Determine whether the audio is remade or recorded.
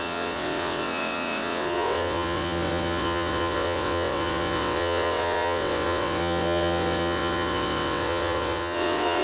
remade